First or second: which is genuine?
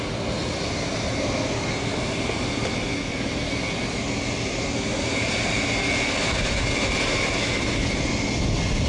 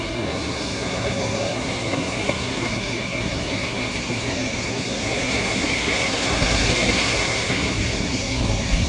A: first